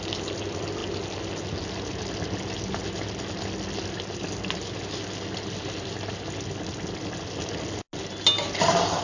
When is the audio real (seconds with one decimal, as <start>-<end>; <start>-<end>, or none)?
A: 0.0-9.0

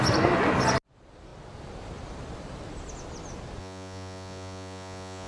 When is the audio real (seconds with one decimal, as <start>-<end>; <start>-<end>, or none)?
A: 0.0-3.6